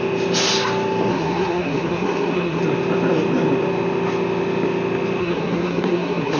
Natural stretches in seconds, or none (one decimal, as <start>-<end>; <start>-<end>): 0.0-1.1; 2.6-5.2

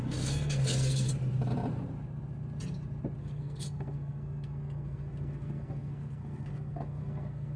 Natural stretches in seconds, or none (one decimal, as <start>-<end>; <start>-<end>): 1.1-3.2

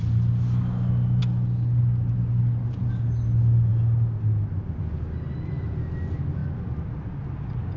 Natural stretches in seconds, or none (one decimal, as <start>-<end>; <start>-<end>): 0.0-7.8

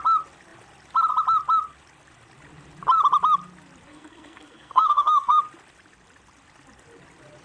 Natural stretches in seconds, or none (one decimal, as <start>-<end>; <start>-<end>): 0.0-3.9; 5.4-7.4

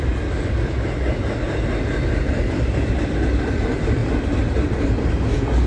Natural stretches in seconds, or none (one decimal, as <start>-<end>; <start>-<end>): 0.0-5.7